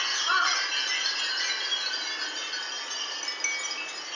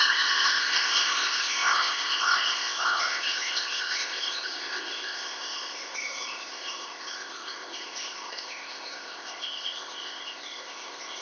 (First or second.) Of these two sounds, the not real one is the second